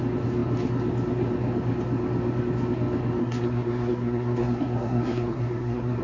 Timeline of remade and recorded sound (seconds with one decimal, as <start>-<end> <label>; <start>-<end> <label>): 0.0-3.2 recorded; 3.2-6.0 remade